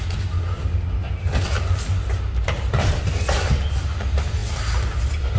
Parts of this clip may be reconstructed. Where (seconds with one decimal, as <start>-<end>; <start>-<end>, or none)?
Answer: none